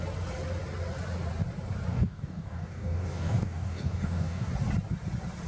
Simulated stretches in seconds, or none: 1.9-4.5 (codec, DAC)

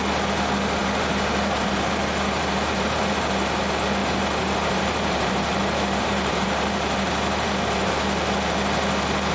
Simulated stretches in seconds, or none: 0.8-3.6 (vocoder, BigVGAN v2); 4.0-7.9

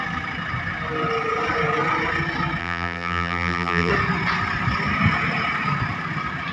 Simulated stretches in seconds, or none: 2.6-3.9 (vocoder, BigVGAN v2)

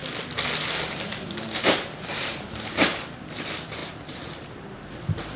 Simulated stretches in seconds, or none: 1.0-5.4 (vocoder, BigVGAN v2)

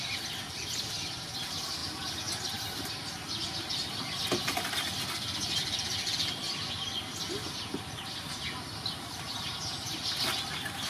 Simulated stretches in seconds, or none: none